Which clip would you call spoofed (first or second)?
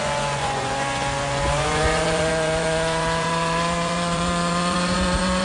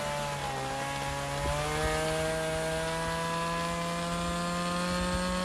first